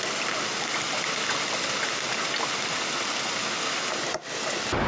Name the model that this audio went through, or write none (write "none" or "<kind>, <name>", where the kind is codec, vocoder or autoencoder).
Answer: none